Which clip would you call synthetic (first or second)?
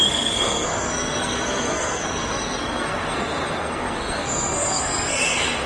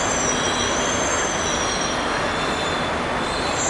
first